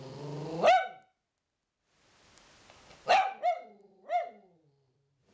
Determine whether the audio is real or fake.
real